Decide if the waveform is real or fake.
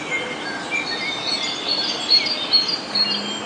real